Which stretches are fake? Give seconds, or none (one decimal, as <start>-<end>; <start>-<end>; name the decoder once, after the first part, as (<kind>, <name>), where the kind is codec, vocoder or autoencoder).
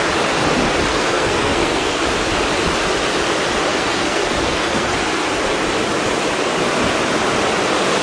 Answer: 0.9-2.0 (codec, SNAC); 3.7-5.0